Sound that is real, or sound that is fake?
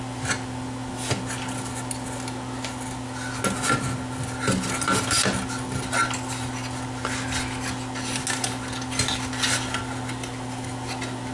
real